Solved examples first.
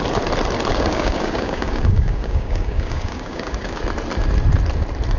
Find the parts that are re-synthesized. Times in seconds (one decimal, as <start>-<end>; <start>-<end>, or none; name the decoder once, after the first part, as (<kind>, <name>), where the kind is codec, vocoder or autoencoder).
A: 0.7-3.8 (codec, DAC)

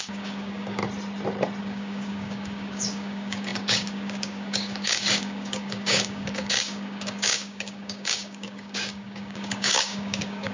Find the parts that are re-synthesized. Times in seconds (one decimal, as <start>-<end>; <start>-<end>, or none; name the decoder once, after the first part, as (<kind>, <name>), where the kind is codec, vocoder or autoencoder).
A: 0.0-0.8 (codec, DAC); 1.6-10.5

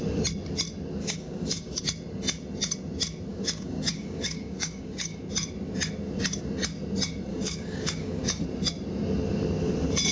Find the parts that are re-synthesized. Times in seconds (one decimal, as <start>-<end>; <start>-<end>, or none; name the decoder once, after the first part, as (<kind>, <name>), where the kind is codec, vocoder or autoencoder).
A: 1.0-1.8 (codec, DAC); 3.3-5.2; 7.3-8.4

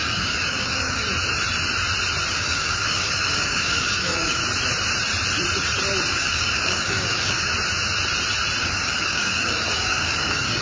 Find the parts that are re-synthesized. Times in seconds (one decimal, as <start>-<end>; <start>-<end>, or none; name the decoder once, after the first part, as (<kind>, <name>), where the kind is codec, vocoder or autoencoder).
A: 0.0-1.0 (codec, DAC); 2.3-4.4; 6.1-7.5; 8.6-10.6

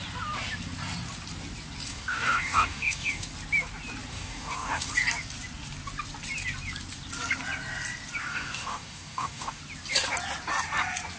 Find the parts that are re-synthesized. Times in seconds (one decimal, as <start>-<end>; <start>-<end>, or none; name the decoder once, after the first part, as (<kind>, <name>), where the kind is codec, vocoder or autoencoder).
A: 1.9-3.3 (codec, DAC); 4.1-4.9; 8.2-9.6

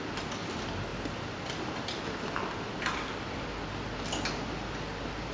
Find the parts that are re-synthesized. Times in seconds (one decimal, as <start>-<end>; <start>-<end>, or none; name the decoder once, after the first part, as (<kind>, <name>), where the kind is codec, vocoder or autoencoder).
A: none

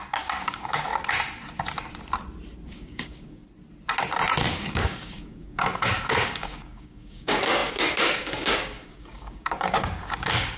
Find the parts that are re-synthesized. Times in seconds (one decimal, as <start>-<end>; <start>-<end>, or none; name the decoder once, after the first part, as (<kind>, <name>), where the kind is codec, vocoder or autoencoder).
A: 0.0-0.9 (codec, DAC); 2.7-3.4; 4.5-10.6

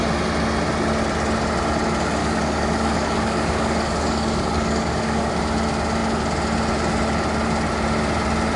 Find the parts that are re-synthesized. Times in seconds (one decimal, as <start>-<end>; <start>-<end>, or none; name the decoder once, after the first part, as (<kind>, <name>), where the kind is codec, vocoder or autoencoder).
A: 2.2-5.3 (codec, DAC)